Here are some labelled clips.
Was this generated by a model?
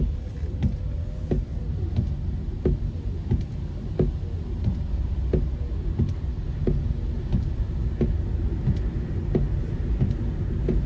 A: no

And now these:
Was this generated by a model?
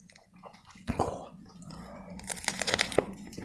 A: yes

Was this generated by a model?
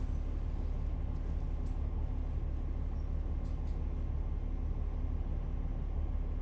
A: no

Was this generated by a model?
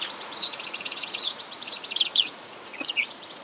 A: yes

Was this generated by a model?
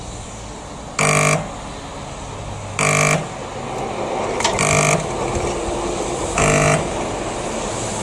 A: no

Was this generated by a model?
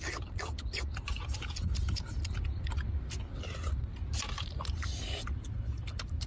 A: no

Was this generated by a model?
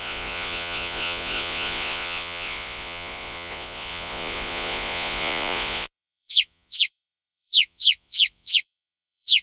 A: yes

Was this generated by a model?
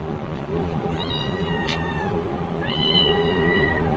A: yes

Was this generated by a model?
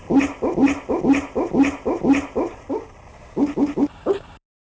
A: no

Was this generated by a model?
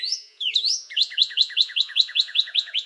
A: yes